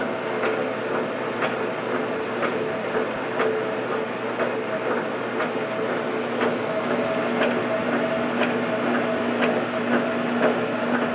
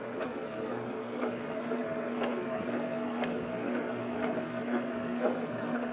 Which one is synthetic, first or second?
second